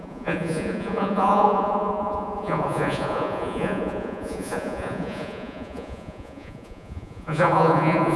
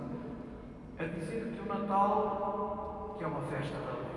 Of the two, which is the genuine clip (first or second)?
second